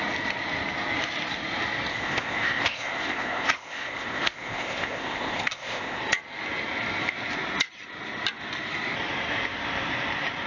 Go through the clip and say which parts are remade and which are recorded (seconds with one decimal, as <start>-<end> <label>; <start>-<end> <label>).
0.0-1.9 recorded; 1.9-6.0 remade; 6.0-10.5 recorded